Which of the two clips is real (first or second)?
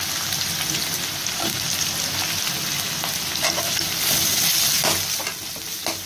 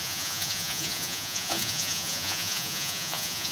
first